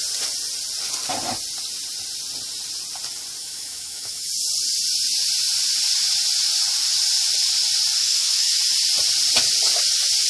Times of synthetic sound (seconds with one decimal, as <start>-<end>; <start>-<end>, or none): 3.4-4.3; 8.0-8.6